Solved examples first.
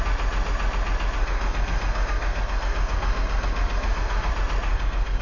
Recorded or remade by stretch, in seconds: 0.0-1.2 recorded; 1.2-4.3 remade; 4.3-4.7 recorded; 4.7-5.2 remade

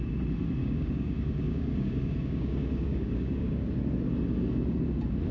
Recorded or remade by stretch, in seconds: 0.0-0.6 recorded; 0.6-3.7 remade; 3.7-5.3 recorded

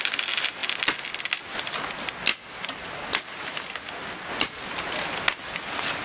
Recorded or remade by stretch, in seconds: 0.0-6.0 recorded

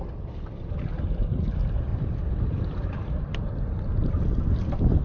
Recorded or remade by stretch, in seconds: 0.0-1.9 recorded; 1.9-5.0 remade

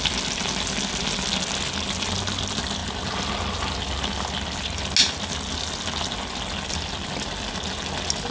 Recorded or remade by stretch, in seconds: 0.0-8.3 recorded

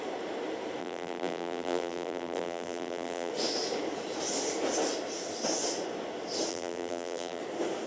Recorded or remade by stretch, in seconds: 0.0-0.8 recorded; 0.8-3.3 remade; 3.3-6.5 recorded; 6.5-7.4 remade; 7.4-7.9 recorded

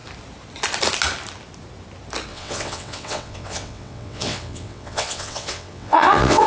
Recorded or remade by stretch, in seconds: 0.0-2.3 recorded; 2.3-6.5 remade

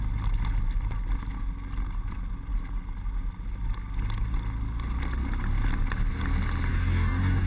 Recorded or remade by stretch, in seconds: 0.0-6.7 recorded; 6.7-7.5 remade